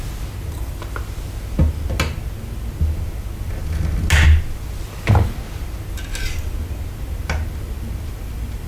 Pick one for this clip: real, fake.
real